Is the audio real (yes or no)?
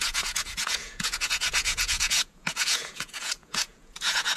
no